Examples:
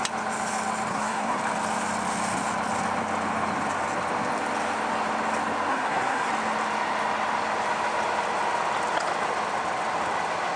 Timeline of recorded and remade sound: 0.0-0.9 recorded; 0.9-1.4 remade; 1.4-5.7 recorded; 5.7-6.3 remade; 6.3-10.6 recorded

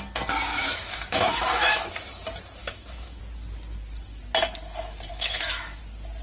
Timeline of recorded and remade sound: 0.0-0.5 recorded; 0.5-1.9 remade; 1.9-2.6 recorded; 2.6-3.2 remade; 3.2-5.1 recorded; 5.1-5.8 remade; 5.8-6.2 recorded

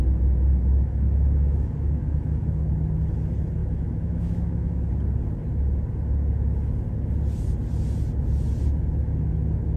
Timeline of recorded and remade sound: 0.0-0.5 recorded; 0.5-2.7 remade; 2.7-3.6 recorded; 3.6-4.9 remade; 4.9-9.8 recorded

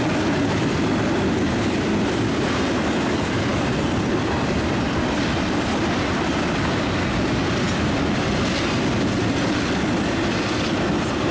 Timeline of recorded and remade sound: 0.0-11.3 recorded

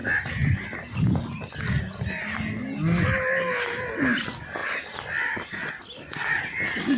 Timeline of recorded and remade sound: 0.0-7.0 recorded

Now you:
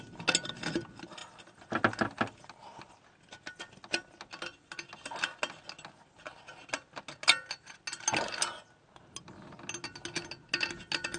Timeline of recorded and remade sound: 0.0-11.2 recorded

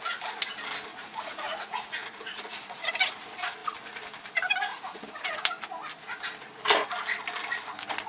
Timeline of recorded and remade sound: 0.0-0.9 recorded; 0.9-2.9 remade; 2.9-4.7 recorded; 4.7-5.4 remade; 5.4-8.1 recorded

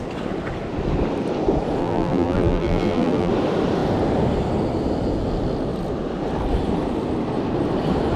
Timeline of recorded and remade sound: 0.0-1.8 recorded; 1.8-3.3 remade; 3.3-8.2 recorded